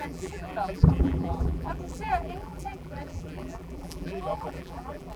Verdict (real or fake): fake